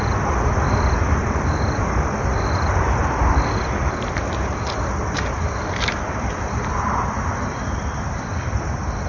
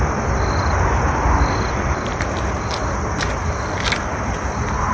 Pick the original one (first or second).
second